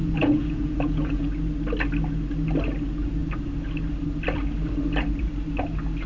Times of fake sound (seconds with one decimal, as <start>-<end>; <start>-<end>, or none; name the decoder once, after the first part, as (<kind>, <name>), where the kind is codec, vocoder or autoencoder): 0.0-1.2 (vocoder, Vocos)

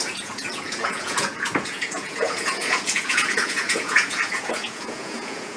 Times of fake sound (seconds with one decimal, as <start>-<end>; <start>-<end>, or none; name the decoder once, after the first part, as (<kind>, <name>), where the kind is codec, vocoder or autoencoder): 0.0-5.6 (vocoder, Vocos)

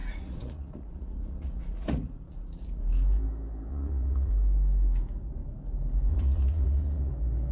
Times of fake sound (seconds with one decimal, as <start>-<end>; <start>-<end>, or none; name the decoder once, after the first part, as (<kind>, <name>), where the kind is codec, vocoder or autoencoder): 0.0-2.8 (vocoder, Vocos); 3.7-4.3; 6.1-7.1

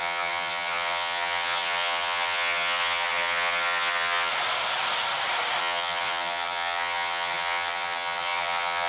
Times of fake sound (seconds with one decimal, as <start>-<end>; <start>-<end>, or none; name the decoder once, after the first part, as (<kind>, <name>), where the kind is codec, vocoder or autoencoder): 0.0-4.3 (vocoder, HiFi-GAN); 5.6-8.9

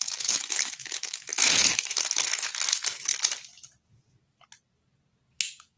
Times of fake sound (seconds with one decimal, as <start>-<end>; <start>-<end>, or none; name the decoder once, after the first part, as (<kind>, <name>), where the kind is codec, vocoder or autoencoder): 0.0-3.1 (autoencoder, DAC-VAE); 5.3-5.8

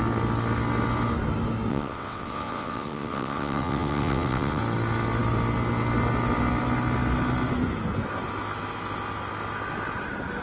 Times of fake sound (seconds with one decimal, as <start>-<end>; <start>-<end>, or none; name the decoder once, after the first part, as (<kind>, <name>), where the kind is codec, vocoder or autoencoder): 1.7-4.6 (vocoder, WaveNeXt)

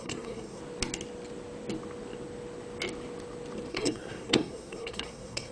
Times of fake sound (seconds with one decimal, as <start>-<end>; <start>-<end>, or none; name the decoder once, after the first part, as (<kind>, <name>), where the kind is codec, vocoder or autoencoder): 0.0-0.6 (codec, SNAC); 3.7-5.5